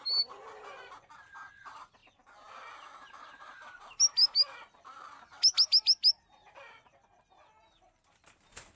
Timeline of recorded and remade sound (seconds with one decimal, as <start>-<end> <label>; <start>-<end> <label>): 0.0-8.8 recorded